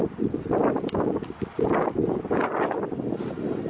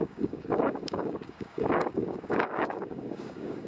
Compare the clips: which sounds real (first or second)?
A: first